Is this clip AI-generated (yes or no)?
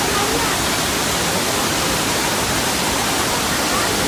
no